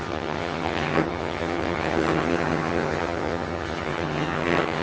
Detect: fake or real fake